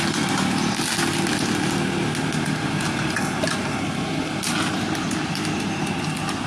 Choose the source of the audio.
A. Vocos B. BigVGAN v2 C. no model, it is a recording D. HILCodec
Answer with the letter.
C